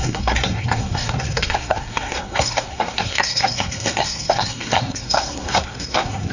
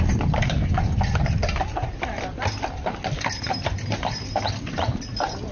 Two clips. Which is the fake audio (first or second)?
first